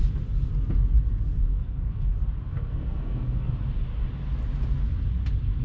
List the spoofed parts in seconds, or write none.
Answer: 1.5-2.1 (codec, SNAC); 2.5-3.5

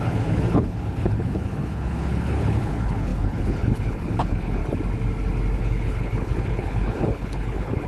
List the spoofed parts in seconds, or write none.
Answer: 0.0-4.6 (codec, HILCodec); 5.6-7.9

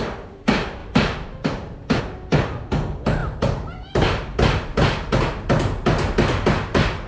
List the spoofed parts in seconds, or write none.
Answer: none

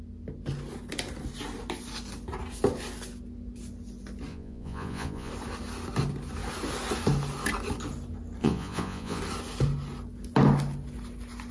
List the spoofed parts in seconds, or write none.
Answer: 4.3-5.3 (vocoder, Vocos); 8.4-9.2

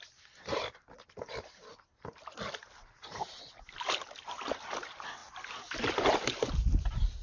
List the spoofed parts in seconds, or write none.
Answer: none

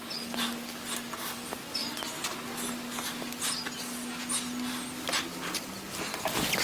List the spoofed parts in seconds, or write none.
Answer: none

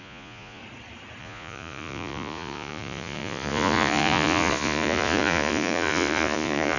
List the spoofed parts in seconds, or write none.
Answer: 0.0-0.6 (vocoder, Vocos); 1.2-6.8